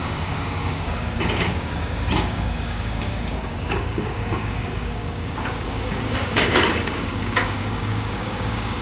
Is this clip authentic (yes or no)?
no